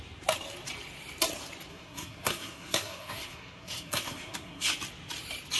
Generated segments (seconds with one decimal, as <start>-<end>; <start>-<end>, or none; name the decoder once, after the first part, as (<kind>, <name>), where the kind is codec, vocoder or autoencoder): 1.7-4.7 (codec, SNAC)